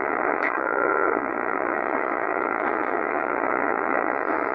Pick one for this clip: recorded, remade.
remade